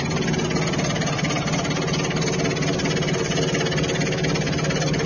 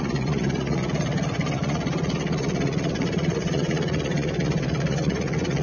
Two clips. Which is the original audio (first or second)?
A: first